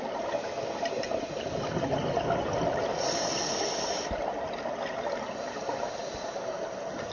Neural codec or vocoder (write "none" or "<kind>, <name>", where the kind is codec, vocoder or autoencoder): none